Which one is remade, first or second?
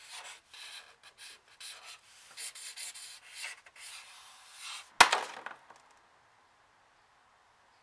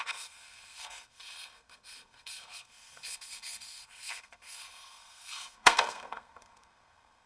second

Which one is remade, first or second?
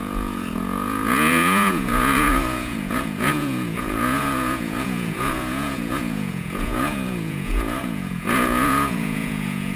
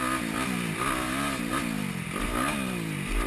first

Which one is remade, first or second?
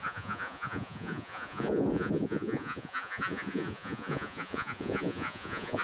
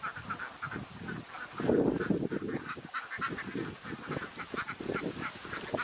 first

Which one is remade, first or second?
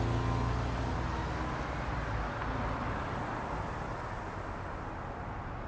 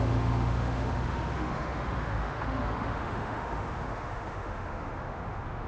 second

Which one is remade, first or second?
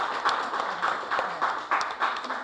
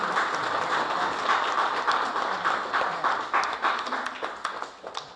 second